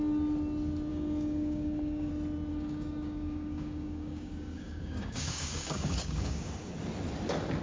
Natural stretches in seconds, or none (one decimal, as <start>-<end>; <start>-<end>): 0.0-0.9; 2.1-2.5; 6.5-7.6